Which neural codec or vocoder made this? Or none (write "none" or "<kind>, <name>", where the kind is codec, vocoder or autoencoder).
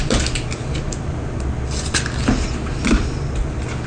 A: none